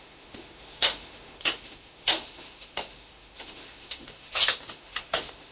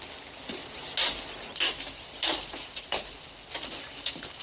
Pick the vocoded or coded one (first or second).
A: first